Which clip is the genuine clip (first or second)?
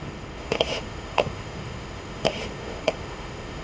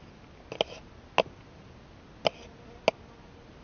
second